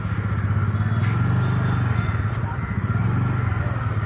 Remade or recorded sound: recorded